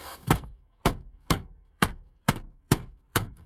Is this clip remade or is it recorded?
remade